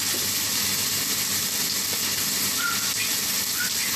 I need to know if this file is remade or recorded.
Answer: recorded